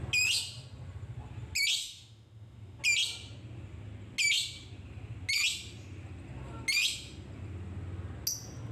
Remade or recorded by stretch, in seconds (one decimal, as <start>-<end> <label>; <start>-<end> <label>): 0.0-1.8 recorded; 1.8-2.8 remade; 2.8-8.7 recorded